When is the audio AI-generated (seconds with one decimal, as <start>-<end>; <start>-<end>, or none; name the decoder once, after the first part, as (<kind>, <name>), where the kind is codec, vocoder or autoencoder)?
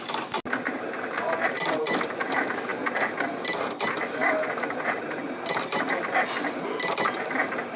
none